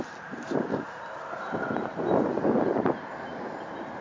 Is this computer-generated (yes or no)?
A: no